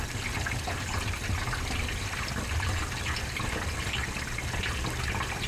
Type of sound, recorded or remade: recorded